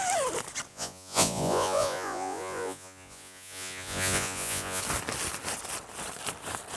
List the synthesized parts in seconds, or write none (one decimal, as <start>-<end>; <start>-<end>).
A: 0.7-4.8